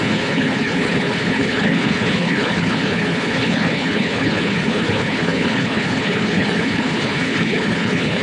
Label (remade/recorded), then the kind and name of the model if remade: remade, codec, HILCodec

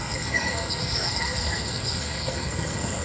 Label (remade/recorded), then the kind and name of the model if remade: remade, codec, SNAC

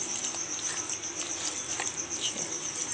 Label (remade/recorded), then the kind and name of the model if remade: recorded